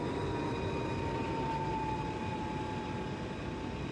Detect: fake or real real